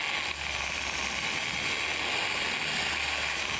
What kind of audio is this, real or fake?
real